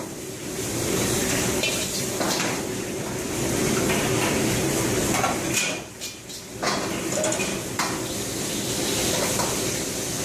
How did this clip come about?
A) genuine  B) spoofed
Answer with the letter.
A